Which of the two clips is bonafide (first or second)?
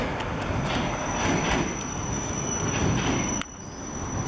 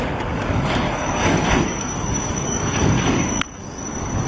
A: first